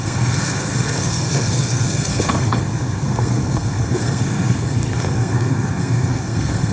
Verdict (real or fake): fake